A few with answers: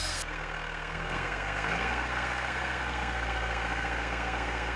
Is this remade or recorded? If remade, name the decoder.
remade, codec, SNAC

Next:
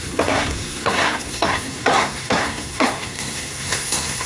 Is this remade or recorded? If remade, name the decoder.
remade, codec, SNAC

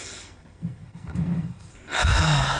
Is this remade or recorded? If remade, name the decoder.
remade, codec, SNAC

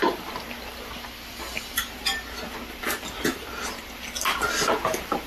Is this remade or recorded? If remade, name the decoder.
recorded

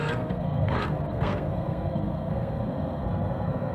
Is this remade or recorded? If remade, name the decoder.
remade, codec, SNAC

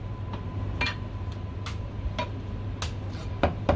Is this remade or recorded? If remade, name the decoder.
recorded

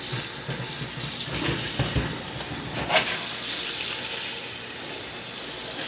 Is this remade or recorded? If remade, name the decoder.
recorded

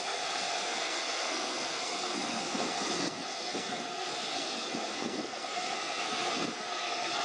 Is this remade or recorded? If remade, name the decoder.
remade, codec, SNAC